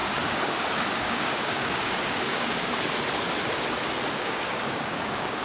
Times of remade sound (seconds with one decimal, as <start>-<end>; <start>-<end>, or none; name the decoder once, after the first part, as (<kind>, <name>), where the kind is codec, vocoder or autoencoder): 0.0-2.7 (codec, DAC); 4.2-5.4